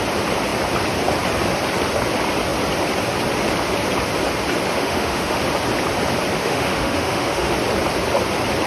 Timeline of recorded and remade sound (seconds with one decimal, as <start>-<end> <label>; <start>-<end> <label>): 0.0-4.7 recorded; 4.7-5.4 remade; 5.4-6.4 recorded; 6.4-7.5 remade; 7.5-8.7 recorded